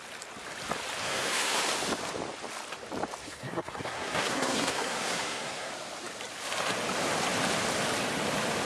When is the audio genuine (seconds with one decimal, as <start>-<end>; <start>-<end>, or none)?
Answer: 0.0-1.0; 1.6-3.2; 5.7-8.6